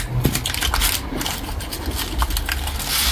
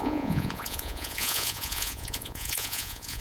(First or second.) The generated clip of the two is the second